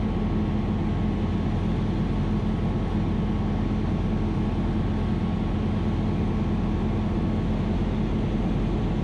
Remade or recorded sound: recorded